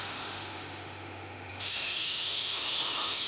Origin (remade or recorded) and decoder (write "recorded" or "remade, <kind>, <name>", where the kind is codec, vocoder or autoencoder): remade, autoencoder, DAC-VAE